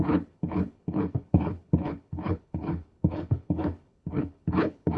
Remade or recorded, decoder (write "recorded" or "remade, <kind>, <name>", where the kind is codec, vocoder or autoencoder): remade, codec, HILCodec